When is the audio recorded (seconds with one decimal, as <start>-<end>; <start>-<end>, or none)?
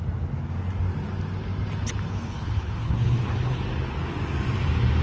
0.0-2.1; 3.6-5.0